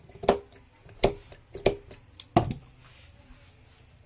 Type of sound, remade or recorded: recorded